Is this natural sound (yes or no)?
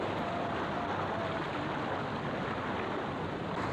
yes